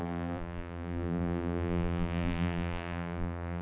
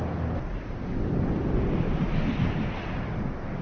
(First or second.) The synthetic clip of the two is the first